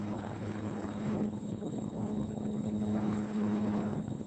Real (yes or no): no